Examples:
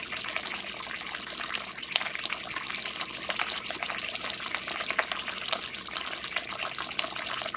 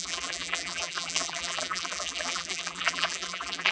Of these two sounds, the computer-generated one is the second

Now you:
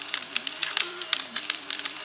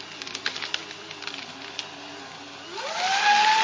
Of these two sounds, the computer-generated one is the first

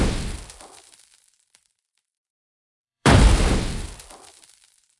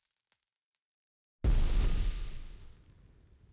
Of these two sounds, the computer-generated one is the first